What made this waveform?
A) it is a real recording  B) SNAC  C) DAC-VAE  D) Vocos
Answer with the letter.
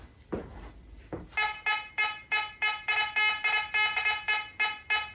A